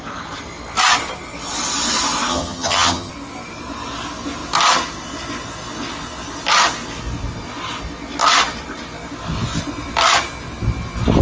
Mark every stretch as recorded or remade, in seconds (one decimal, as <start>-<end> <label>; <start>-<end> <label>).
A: 0.0-2.3 recorded; 2.3-3.1 remade; 3.1-11.2 recorded